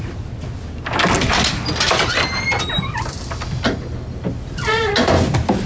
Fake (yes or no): no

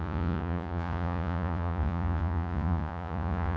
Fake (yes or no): yes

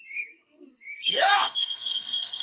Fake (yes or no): yes